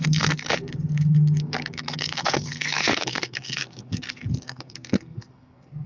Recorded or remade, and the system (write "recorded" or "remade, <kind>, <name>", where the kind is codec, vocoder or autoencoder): remade, codec, SNAC